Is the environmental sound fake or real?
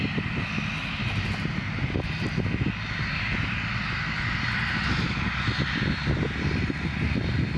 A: real